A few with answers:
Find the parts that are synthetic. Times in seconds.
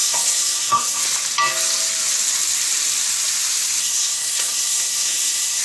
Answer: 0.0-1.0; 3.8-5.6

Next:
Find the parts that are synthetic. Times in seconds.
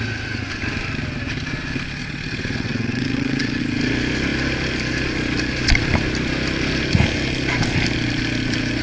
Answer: 2.0-3.6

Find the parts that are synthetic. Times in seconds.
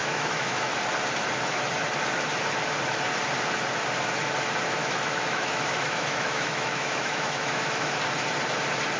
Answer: 0.0-0.7; 4.8-8.0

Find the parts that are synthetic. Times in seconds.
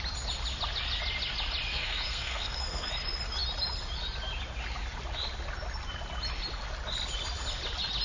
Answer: 1.7-2.9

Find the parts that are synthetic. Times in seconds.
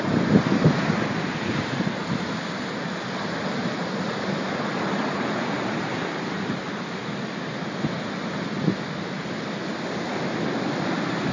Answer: 2.0-6.6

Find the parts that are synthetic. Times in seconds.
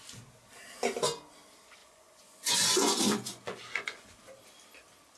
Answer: 1.8-4.2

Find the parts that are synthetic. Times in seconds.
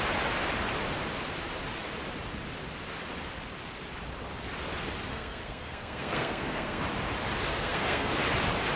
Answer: 5.1-6.8; 7.5-8.1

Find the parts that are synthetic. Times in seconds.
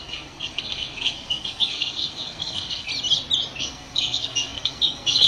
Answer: 0.0-2.9; 3.6-5.3